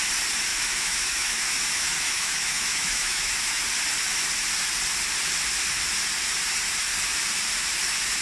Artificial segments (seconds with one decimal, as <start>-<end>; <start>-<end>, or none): 0.5-3.6